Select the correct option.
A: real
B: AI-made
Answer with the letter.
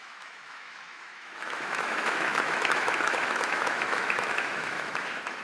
B